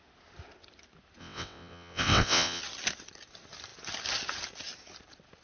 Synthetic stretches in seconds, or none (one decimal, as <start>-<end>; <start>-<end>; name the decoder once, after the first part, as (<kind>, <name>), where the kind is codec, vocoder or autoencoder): 1.2-2.6 (vocoder, WaveNeXt)